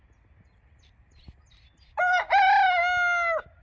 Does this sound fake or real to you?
real